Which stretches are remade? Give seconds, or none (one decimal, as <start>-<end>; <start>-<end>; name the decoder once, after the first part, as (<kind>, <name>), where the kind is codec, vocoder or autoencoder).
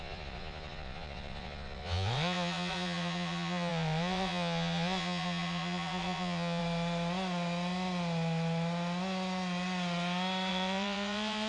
0.0-6.6 (vocoder, Vocos); 10.5-11.5